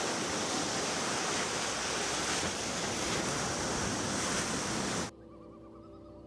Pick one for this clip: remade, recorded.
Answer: recorded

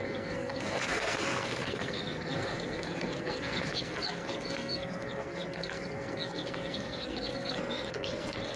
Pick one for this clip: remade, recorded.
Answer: remade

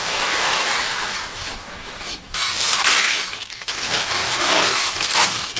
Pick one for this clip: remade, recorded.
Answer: remade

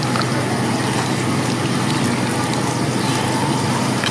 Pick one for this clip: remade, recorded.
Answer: recorded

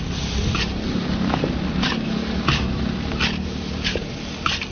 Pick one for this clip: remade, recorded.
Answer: recorded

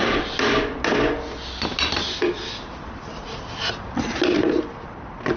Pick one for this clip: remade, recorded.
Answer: recorded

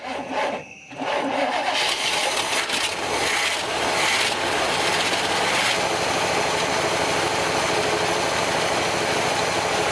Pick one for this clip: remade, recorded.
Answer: recorded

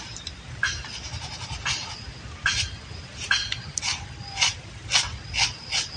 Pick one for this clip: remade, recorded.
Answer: recorded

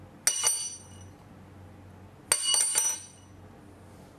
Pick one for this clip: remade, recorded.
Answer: recorded